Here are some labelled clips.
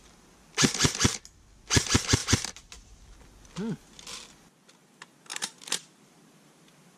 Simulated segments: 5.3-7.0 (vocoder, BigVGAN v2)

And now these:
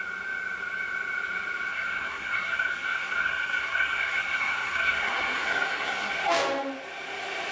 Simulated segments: 1.7-6.1 (codec, SNAC)

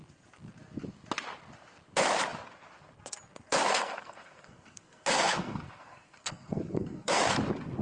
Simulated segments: 3.7-7.2 (codec, SNAC)

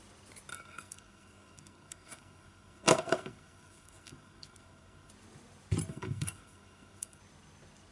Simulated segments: 0.5-5.1 (codec, SNAC); 5.9-7.2

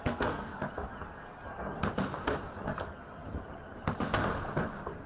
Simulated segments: 0.0-0.6 (codec, SNAC)

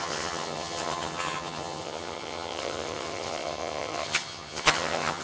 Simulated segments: 0.0-5.2 (vocoder, HiFi-GAN)